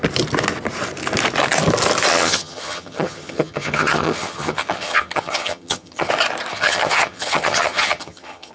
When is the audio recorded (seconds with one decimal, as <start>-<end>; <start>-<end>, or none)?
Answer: 0.0-2.1; 6.1-6.5